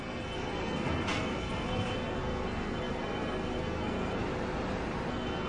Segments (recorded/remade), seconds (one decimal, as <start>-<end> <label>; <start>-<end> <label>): 0.0-4.2 remade; 4.2-5.1 recorded; 5.1-5.5 remade